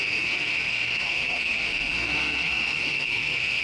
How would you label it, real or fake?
fake